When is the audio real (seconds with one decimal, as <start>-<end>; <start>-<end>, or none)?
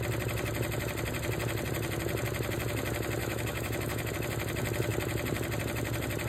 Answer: 0.0-3.2; 4.1-6.3